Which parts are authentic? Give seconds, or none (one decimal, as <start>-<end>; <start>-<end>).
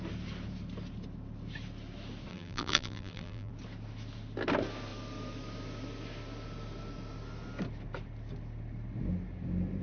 0.0-2.3; 3.5-9.8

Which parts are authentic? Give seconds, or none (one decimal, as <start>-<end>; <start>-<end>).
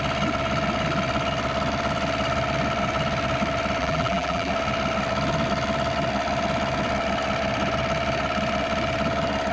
0.0-3.8; 4.5-9.5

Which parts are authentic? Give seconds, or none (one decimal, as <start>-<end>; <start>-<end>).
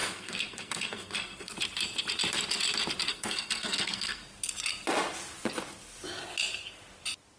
1.5-3.1; 4.2-7.4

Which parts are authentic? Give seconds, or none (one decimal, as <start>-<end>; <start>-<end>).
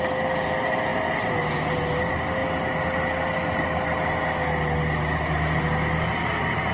0.0-6.7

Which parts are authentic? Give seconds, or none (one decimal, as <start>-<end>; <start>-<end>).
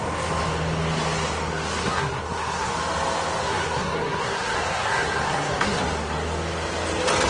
0.0-1.8; 2.7-3.4; 5.8-7.3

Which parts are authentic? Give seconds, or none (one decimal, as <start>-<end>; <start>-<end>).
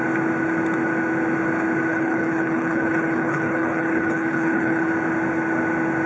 0.0-1.9; 4.9-6.1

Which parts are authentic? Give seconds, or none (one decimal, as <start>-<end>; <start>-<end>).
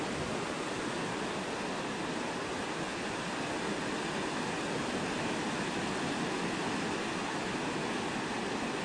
0.0-2.9; 3.7-8.8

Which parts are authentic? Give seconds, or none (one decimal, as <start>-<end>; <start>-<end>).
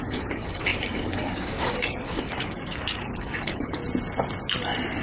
3.8-5.0